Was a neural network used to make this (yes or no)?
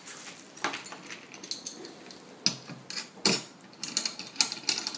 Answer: no